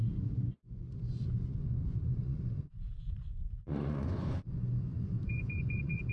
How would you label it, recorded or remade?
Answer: remade